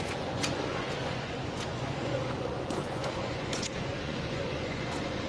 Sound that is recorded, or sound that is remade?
remade